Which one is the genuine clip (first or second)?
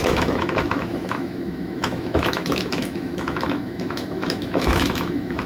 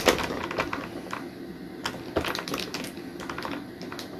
second